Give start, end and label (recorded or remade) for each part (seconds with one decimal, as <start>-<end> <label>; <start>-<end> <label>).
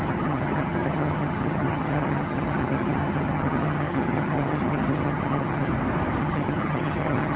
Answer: 0.0-5.7 remade; 5.7-6.2 recorded; 6.2-7.4 remade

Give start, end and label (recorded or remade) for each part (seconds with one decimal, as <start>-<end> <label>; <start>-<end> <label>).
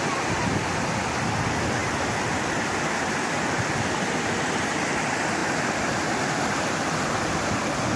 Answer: 0.0-8.0 recorded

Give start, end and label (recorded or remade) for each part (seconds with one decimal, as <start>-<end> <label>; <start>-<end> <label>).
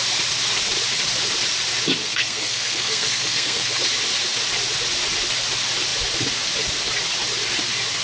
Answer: 0.0-2.0 recorded; 2.0-3.8 remade; 3.8-8.0 recorded